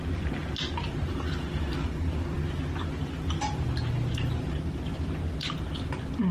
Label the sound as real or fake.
fake